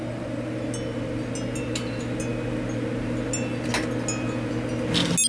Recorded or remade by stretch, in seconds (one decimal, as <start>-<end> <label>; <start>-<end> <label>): 0.0-5.3 recorded